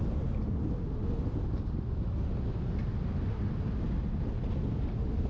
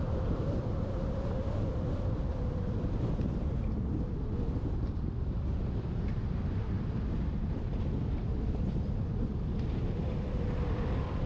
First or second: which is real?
first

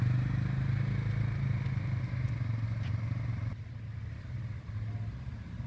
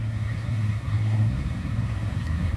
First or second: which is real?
first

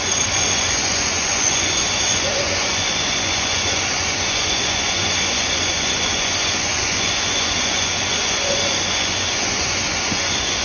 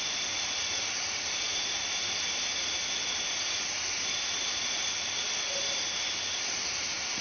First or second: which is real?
second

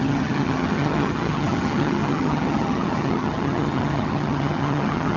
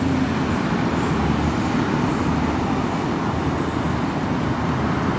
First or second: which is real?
second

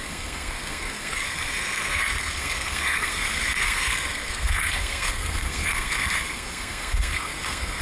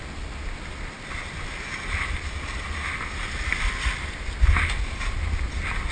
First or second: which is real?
second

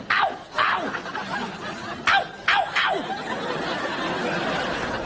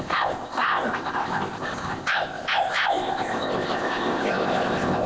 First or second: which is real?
first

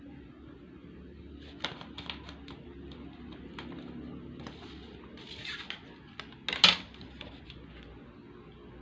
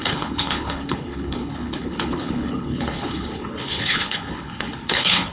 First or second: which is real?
first